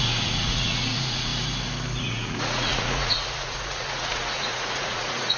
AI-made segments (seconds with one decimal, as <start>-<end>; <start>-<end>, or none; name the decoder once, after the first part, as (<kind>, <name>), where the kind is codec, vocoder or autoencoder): 0.0-1.3 (vocoder, Vocos); 2.0-5.4